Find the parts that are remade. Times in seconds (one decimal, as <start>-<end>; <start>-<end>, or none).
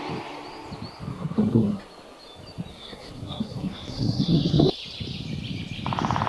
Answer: 1.1-1.8; 2.7-4.7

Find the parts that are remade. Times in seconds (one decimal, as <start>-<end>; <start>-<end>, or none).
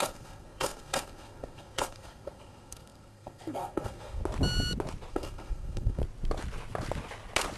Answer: 0.0-4.2; 5.1-6.0